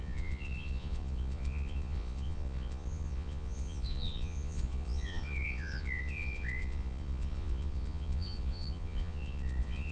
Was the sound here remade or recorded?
remade